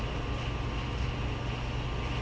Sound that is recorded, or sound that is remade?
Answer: recorded